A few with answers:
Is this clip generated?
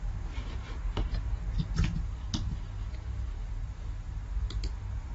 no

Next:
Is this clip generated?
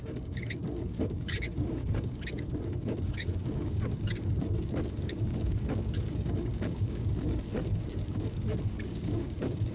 yes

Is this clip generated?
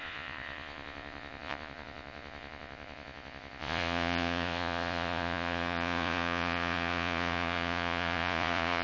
yes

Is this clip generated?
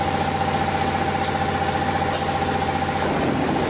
no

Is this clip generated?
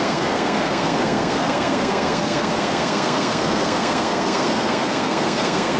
yes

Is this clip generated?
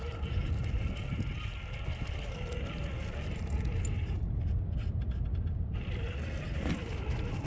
no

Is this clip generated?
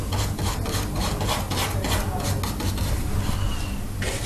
no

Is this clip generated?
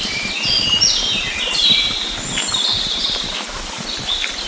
no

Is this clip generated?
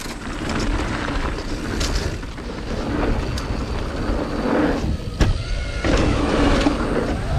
no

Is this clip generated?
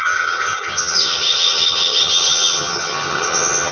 yes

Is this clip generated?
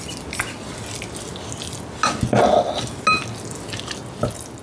no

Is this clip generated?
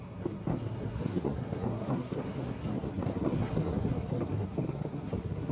yes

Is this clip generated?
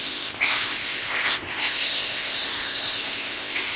yes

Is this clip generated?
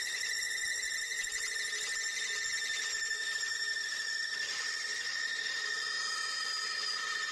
no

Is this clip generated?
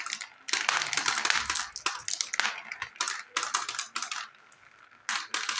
no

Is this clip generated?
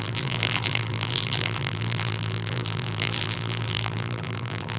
yes